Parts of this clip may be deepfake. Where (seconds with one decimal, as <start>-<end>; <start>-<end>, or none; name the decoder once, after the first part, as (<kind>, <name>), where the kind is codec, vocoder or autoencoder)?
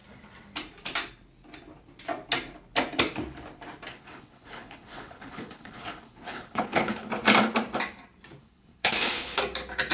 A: 3.9-7.1 (codec, HILCodec); 8.4-9.4